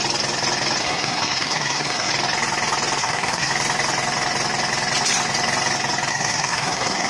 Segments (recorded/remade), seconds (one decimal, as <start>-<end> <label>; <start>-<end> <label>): 0.0-0.8 recorded; 0.8-2.1 remade; 2.1-3.0 recorded; 3.0-3.5 remade; 3.5-6.1 recorded; 6.1-7.1 remade